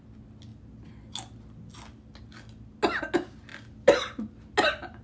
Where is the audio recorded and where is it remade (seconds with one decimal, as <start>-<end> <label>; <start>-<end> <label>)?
0.0-5.0 recorded